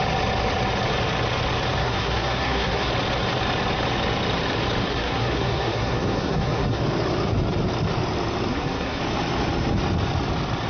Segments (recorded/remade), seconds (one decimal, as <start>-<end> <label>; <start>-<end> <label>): 0.0-1.8 recorded; 1.8-2.9 remade; 2.9-4.8 recorded; 4.8-6.8 remade; 6.8-8.5 recorded; 8.5-9.0 remade; 9.0-10.7 recorded